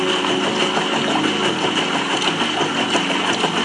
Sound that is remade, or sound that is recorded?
recorded